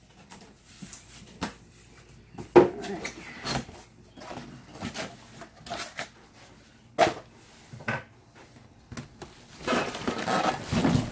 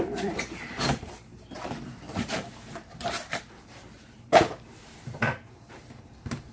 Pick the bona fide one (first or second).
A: first